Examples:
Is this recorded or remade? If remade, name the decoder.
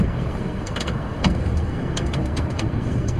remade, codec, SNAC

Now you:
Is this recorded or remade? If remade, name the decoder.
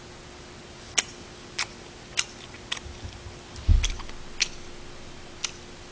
recorded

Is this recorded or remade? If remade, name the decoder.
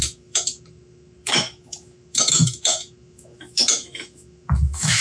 remade, autoencoder, DAC-VAE